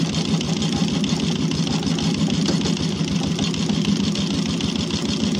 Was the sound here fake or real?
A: real